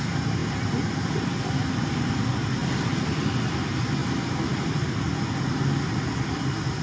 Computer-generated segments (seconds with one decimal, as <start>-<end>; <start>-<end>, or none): none